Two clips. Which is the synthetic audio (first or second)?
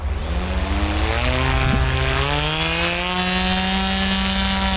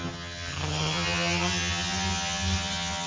second